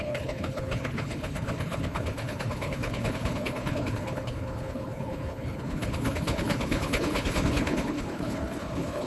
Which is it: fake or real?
fake